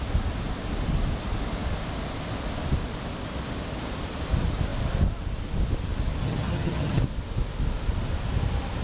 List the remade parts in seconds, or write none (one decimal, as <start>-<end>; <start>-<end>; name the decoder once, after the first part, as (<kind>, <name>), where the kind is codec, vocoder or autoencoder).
6.2-7.0 (vocoder, HiFi-GAN)